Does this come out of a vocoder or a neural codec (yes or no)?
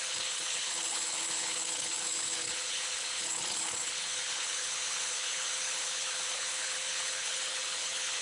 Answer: yes